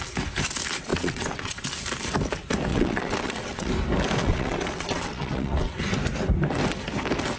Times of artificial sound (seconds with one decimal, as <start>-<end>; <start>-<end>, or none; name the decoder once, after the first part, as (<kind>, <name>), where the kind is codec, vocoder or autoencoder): 0.9-1.7 (vocoder, WaveNeXt); 2.7-3.7; 4.2-5.8

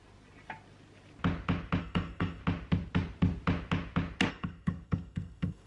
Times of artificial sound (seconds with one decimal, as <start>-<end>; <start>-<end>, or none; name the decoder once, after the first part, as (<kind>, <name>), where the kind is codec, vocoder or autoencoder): 1.8-2.4 (codec, SNAC); 4.3-5.7

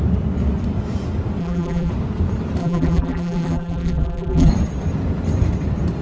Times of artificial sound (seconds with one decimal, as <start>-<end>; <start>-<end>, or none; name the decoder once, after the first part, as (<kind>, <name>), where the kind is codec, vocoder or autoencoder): 1.4-1.9 (vocoder, BigVGAN v2); 2.6-4.5

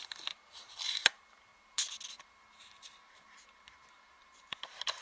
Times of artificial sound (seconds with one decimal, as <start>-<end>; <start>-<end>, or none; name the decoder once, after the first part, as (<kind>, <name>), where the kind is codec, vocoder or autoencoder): 0.0-1.5 (vocoder, BigVGAN v2); 3.9-5.0